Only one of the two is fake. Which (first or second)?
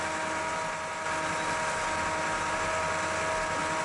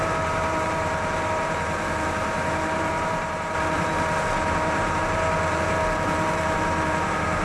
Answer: second